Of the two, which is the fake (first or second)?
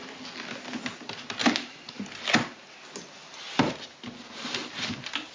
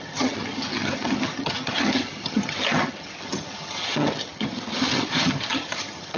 second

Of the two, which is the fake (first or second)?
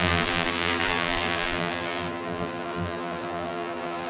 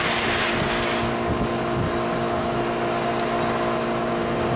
first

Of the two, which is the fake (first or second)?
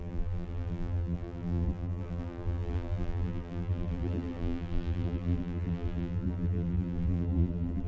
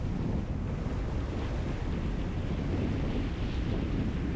first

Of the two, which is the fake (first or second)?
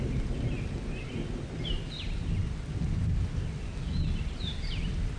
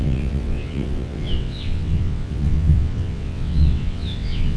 second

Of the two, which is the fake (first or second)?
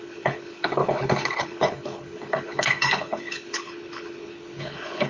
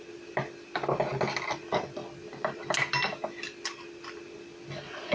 first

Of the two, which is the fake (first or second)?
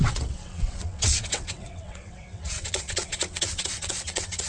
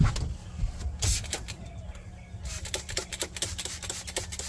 first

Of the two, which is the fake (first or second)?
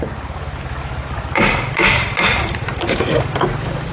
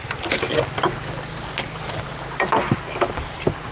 first